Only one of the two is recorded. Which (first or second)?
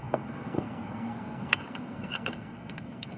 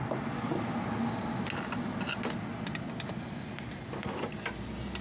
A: second